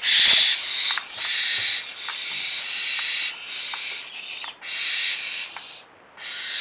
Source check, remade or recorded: recorded